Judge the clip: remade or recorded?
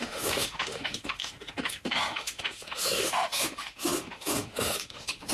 remade